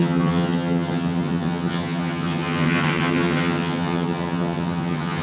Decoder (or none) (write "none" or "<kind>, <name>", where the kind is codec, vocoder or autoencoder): vocoder, HiFi-GAN